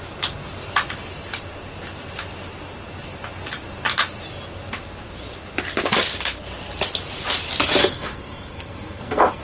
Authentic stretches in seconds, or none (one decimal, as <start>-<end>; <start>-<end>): 0.0-7.8